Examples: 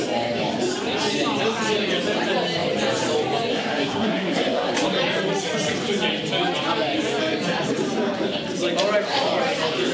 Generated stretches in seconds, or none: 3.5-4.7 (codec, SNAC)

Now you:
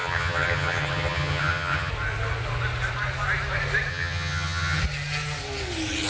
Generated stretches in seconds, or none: 0.0-1.9 (vocoder, HiFi-GAN); 3.9-4.8

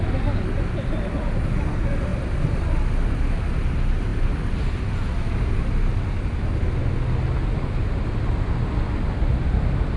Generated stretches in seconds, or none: none

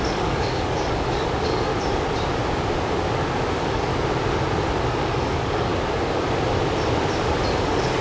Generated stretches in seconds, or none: 0.0-1.7 (codec, DAC); 3.5-3.9; 4.8-5.7; 7.6-8.0

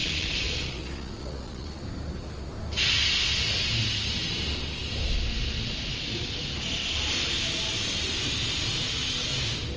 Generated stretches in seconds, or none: 0.0-1.8 (vocoder, Vocos)

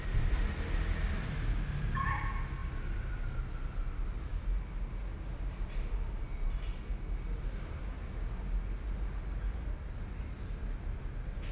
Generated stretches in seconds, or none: none

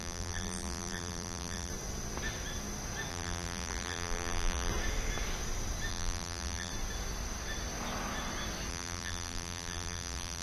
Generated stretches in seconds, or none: 0.0-1.7 (vocoder, BigVGAN v2); 3.1-4.7; 5.9-6.7; 8.7-10.4